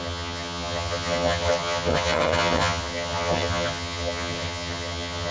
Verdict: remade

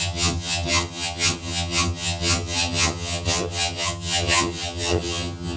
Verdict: remade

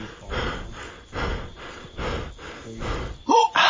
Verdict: recorded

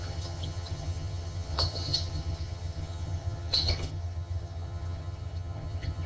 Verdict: remade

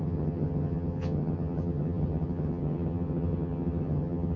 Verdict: remade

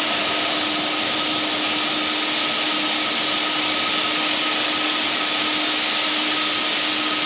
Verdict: recorded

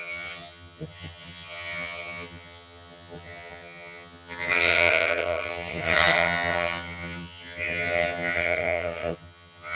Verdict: remade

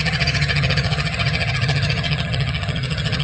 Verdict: remade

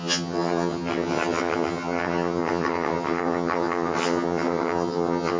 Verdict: remade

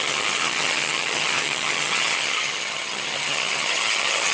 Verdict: remade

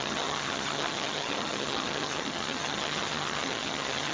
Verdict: remade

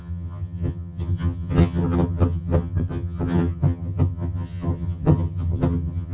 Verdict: remade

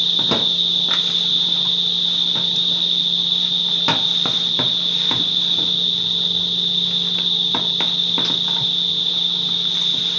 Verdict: recorded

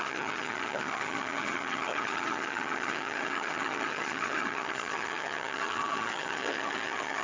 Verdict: remade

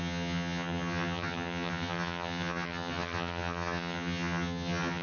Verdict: remade